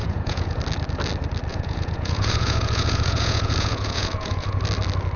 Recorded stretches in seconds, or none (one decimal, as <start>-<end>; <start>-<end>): 0.6-1.5; 4.6-5.2